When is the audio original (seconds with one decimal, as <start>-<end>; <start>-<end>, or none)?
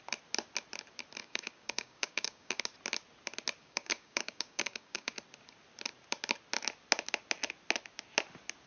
0.0-1.2; 2.6-3.6; 5.1-8.7